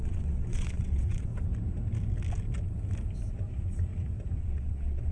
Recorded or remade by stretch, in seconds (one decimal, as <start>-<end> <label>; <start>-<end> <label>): 0.0-1.3 remade; 1.3-4.4 recorded; 4.4-5.1 remade

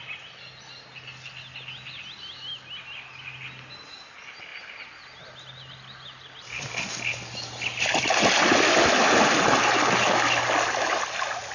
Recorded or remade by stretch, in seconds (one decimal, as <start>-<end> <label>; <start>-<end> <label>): 0.0-11.5 recorded

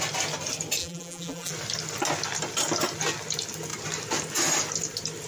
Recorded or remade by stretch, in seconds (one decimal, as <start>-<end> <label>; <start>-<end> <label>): 0.0-0.8 recorded; 0.8-1.5 remade; 1.5-5.3 recorded

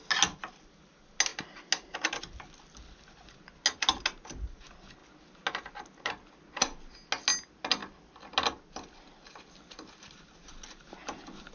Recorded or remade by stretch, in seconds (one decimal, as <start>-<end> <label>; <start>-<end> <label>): 0.0-11.5 recorded